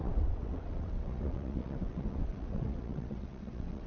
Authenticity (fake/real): fake